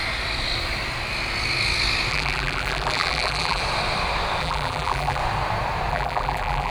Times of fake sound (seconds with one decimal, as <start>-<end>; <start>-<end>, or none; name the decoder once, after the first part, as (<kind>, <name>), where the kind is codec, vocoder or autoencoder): 2.1-3.6 (vocoder, BigVGAN v2); 4.4-5.2; 5.9-6.7